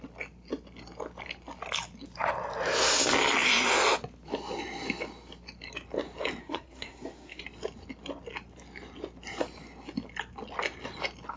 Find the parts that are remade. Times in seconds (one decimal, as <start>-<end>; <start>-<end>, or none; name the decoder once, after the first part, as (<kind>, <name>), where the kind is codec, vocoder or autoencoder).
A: 6.4-7.4 (codec, SNAC)